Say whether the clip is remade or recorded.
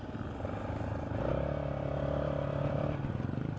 recorded